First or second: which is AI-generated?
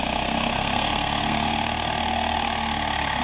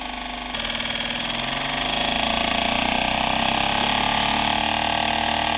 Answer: first